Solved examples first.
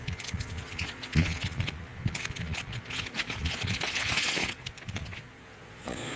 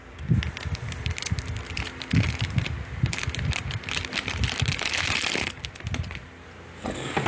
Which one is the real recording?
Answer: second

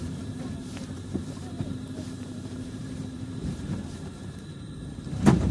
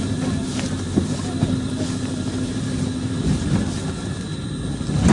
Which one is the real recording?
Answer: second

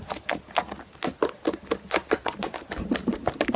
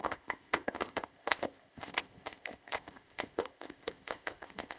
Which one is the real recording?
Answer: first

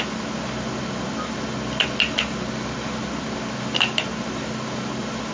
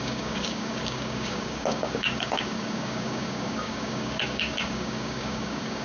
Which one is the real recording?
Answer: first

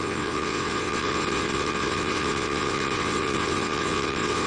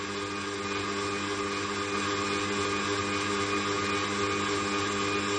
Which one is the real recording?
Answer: second